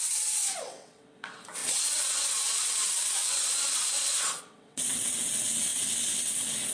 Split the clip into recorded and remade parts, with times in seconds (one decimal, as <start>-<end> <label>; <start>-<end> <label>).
0.0-6.7 remade